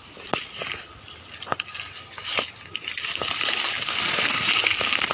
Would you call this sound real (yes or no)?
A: yes